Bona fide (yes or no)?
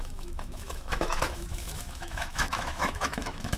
no